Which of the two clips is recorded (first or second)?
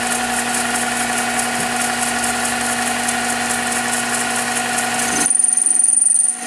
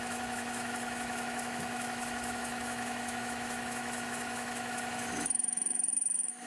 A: first